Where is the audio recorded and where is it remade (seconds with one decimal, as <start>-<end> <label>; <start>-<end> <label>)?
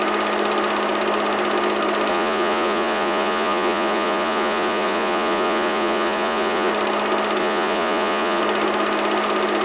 0.0-2.1 recorded; 2.1-6.7 remade; 6.7-7.4 recorded; 7.4-8.4 remade; 8.4-9.6 recorded